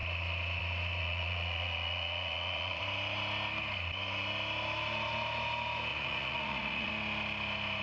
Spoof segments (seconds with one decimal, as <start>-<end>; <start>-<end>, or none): 1.0-2.8; 5.9-6.9